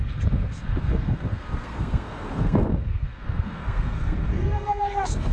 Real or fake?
fake